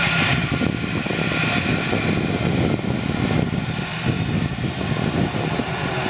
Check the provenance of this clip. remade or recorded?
recorded